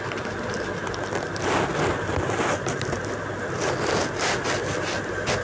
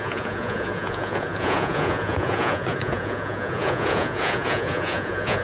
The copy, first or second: second